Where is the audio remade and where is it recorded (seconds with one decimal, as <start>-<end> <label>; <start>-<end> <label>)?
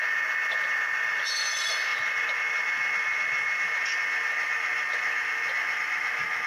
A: 0.0-6.5 recorded